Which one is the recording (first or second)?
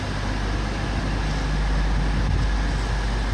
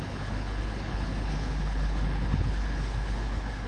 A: first